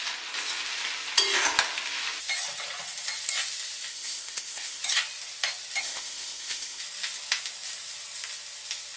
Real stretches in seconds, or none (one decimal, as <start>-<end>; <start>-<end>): 0.0-3.9; 4.8-5.8; 6.8-9.0